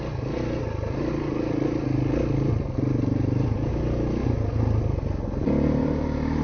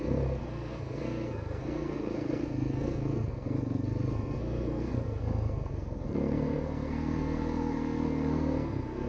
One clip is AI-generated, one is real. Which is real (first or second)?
first